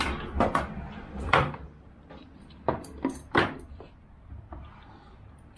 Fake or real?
fake